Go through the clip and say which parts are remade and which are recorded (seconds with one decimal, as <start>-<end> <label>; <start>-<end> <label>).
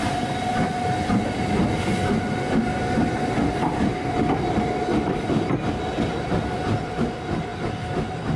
0.0-8.4 recorded